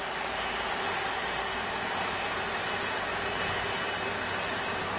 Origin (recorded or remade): recorded